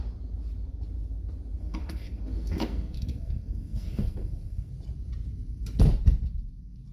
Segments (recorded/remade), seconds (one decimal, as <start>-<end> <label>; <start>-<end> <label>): 0.0-1.6 recorded; 1.6-4.7 remade; 4.7-6.9 recorded